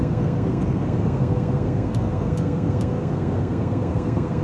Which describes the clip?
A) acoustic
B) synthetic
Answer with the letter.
B